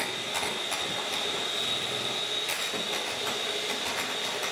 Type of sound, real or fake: real